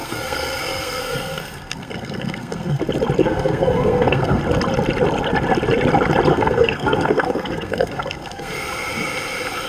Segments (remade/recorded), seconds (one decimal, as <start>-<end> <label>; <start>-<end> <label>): 0.0-2.8 remade; 2.8-3.2 recorded; 3.2-4.4 remade; 4.4-6.3 recorded; 6.3-8.5 remade; 8.5-9.7 recorded